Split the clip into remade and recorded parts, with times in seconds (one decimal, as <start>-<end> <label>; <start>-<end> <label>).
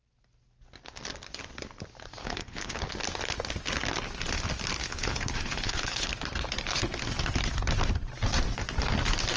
0.0-2.2 recorded; 2.2-2.8 remade; 2.8-4.8 recorded; 4.8-6.1 remade; 6.1-9.4 recorded